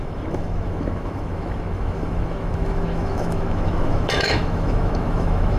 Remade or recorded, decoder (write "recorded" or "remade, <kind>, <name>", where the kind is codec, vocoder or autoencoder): remade, autoencoder, DAC-VAE